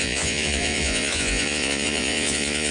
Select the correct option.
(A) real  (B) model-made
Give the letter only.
B